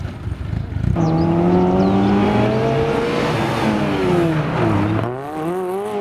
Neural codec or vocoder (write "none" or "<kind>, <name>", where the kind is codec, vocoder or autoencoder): none